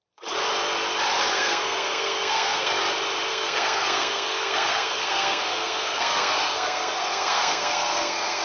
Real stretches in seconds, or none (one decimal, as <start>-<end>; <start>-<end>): 0.0-1.2; 2.8-3.3